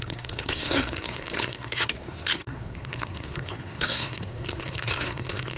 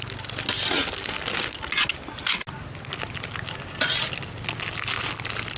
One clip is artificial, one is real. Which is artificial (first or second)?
first